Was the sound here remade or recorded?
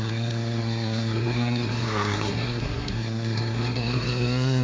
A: remade